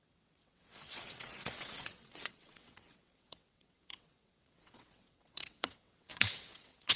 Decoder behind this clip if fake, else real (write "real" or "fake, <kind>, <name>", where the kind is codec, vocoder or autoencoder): fake, vocoder, WaveNeXt